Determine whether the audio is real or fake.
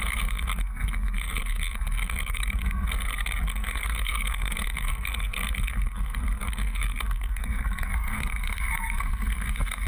fake